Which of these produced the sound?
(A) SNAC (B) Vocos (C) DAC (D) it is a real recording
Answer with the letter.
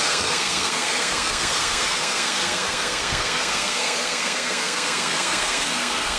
A